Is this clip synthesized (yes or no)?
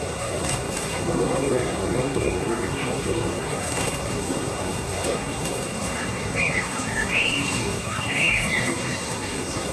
yes